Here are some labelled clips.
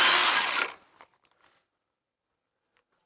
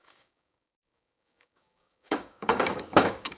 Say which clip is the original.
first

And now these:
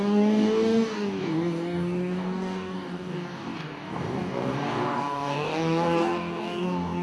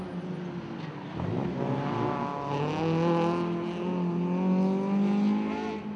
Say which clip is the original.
second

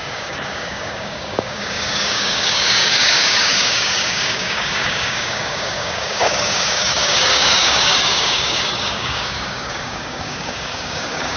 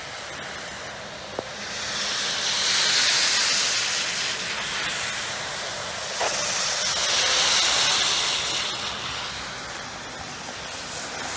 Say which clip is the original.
second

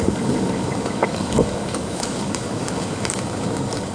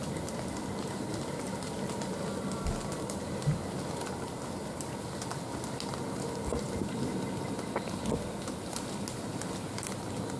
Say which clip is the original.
second